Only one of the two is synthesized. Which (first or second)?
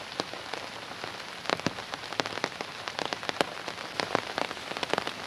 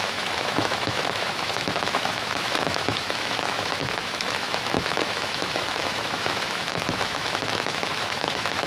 second